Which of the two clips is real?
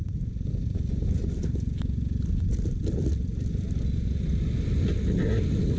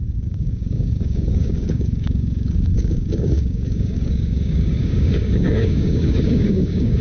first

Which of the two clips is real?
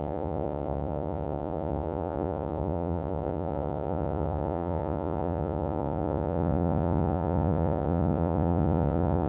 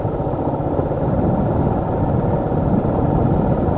second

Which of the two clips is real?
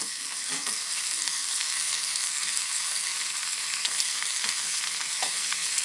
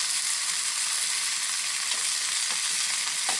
second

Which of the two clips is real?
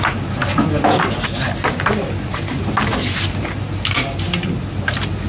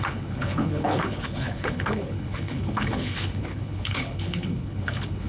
first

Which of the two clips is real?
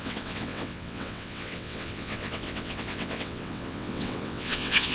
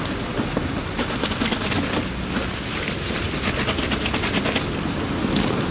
second